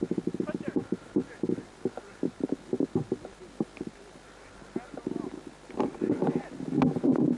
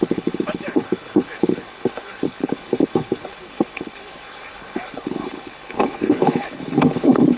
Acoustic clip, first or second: first